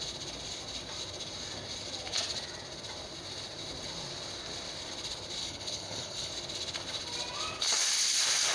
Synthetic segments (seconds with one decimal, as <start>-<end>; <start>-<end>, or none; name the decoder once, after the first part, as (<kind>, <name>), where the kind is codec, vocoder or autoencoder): 5.4-6.3 (codec, HILCodec)